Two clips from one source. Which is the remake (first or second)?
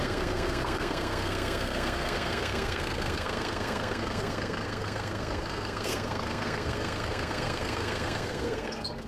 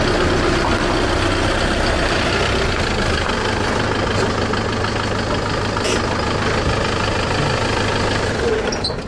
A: first